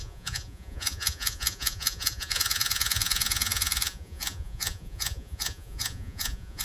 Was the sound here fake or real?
fake